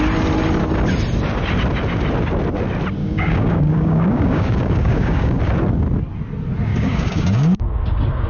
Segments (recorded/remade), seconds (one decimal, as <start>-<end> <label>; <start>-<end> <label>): 0.0-3.0 recorded; 3.0-5.4 remade; 5.4-6.7 recorded; 6.7-7.6 remade; 7.6-8.3 recorded